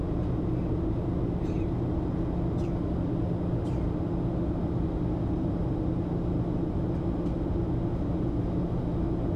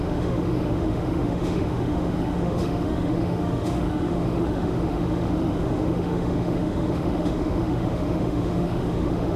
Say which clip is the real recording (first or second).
first